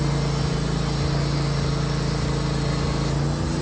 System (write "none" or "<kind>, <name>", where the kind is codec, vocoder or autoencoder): none